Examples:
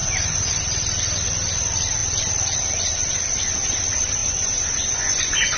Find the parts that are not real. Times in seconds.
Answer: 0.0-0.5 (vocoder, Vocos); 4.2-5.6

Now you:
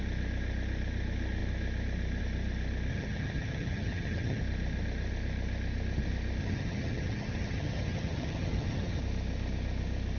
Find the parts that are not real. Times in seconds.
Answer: 2.9-4.4 (vocoder, HiFi-GAN); 6.4-9.0

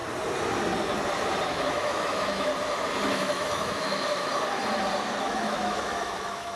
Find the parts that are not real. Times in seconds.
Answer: 1.5-2.5 (autoencoder, DAC-VAE); 3.1-4.3; 5.2-6.6

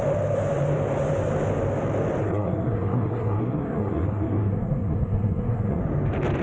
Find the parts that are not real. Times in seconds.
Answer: 2.2-5.8 (codec, SNAC)

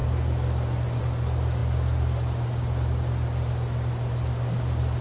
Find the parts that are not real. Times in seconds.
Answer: none

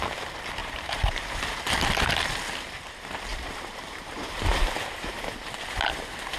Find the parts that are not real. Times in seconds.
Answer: 0.6-1.7 (vocoder, BigVGAN v2); 3.3-5.2

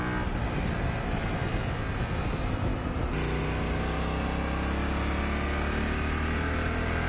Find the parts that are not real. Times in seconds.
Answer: none

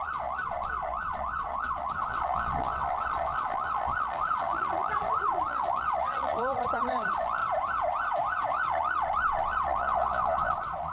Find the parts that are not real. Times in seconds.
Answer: 0.0-7.4 (vocoder, Vocos); 8.5-10.9